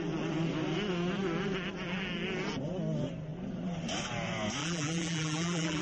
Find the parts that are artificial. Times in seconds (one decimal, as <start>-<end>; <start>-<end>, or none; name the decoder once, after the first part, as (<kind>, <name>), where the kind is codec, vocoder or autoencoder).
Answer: 4.6-5.8 (vocoder, BigVGAN v2)